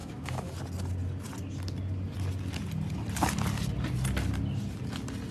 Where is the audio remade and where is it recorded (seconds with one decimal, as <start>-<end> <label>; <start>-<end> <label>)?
0.0-0.5 remade; 0.5-5.3 recorded